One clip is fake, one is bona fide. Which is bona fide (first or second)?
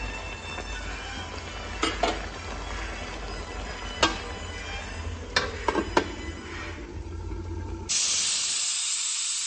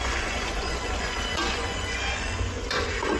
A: first